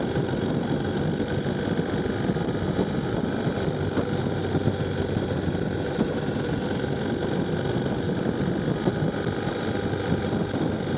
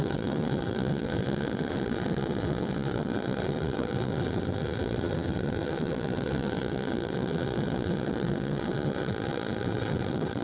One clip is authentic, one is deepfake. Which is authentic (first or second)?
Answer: first